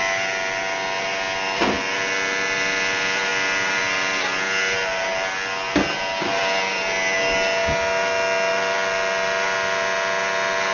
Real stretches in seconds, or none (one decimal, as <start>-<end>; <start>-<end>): 0.0-10.7